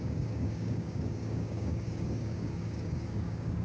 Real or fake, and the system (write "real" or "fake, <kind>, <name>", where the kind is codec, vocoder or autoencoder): fake, codec, DAC